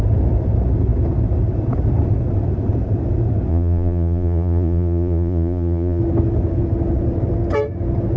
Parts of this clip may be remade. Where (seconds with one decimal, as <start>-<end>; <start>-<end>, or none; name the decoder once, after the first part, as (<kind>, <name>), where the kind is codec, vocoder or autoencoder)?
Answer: 3.5-6.0 (vocoder, Vocos)